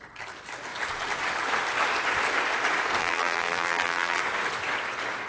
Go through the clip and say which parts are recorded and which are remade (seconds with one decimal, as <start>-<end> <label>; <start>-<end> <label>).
0.0-3.0 recorded; 3.0-4.2 remade; 4.2-5.3 recorded